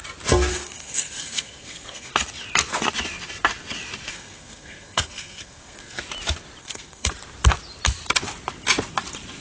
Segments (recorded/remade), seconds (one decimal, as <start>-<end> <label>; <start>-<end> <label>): 0.0-0.5 recorded; 0.5-2.1 remade; 2.1-4.1 recorded; 4.1-6.0 remade; 6.0-6.6 recorded; 6.6-7.1 remade; 7.1-9.4 recorded